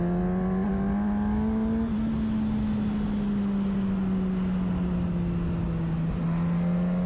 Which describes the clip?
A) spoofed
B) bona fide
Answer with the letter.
B